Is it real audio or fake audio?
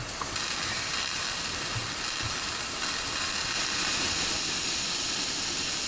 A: real